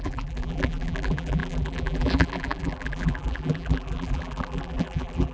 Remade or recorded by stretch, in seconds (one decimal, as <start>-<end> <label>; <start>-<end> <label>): 0.0-5.3 remade